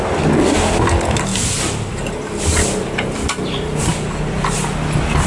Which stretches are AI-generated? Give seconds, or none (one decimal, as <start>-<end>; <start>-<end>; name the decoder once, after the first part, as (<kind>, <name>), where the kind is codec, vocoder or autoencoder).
none